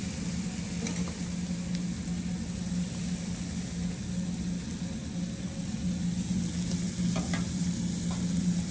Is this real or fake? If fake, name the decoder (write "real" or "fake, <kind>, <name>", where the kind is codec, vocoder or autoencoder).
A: real